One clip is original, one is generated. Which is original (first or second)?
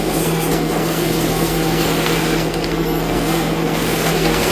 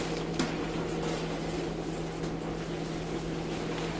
second